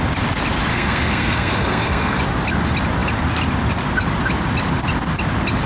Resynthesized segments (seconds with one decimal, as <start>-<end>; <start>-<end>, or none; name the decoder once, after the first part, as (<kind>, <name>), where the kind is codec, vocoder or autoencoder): 0.7-2.2 (codec, SNAC)